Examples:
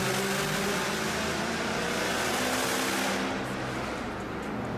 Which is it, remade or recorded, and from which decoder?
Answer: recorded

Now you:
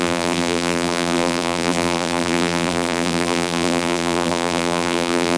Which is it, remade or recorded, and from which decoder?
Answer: remade, vocoder, BigVGAN v2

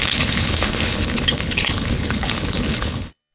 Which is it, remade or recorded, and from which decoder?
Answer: remade, codec, HILCodec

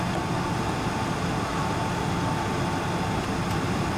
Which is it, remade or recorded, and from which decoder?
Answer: recorded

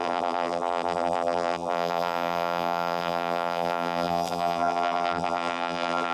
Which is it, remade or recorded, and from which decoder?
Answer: remade, vocoder, BigVGAN v2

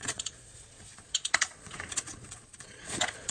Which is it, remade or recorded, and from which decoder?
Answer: remade, vocoder, Vocos